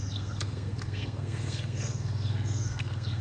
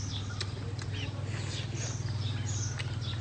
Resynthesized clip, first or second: first